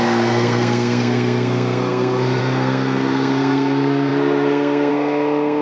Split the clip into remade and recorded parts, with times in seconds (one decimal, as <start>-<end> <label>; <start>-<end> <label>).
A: 0.0-5.6 remade